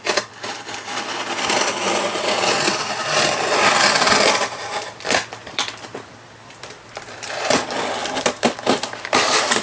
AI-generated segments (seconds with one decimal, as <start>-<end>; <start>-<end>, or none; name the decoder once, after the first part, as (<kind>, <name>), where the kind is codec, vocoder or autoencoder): 0.0-9.6 (vocoder, BigVGAN v2)